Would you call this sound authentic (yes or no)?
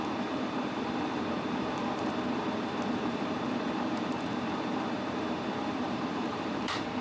no